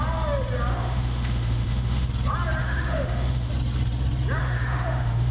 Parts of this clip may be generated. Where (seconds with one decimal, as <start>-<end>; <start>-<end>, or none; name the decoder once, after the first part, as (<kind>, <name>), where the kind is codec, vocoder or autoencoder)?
0.7-2.1 (autoencoder, DAC-VAE); 2.6-3.5; 4.4-5.3